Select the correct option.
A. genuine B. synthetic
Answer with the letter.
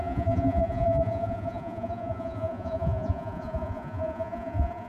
B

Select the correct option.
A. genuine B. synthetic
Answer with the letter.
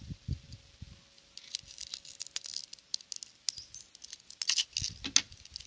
A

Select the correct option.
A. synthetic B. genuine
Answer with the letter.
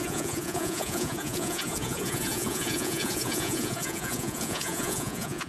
A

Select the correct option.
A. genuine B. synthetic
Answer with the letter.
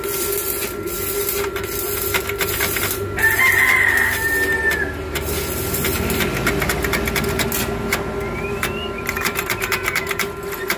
A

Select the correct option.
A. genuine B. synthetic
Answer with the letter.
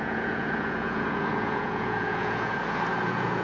B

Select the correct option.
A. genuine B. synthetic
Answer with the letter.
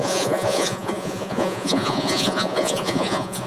B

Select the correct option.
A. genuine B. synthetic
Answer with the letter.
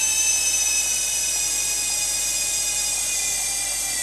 A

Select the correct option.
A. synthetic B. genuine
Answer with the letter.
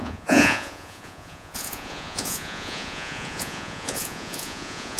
A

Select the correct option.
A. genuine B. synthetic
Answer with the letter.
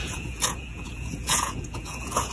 B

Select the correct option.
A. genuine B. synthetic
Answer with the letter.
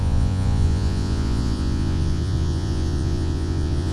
B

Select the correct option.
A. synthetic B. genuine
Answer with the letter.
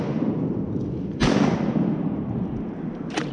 B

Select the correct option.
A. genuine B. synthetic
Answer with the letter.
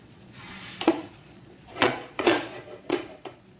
B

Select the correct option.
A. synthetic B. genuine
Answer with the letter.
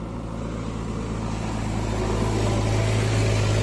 B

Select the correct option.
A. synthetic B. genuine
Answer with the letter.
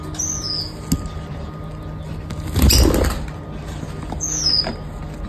B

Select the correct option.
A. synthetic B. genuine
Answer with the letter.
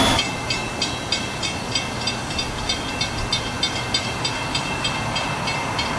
B